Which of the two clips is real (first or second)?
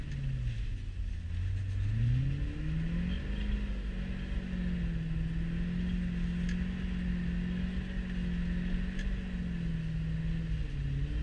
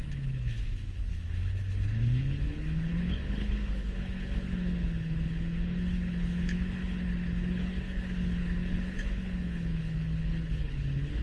first